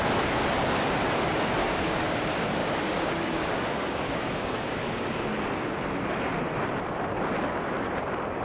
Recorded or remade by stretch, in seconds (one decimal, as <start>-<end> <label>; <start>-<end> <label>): 0.0-1.6 recorded; 1.6-2.2 remade; 2.2-2.6 recorded; 2.6-5.2 remade; 5.2-8.4 recorded